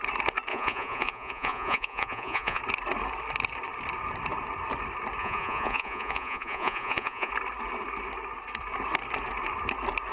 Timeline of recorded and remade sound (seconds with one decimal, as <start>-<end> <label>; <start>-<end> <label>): 0.0-0.5 recorded; 0.5-2.6 remade; 2.6-5.2 recorded; 5.2-7.3 remade; 7.3-10.1 recorded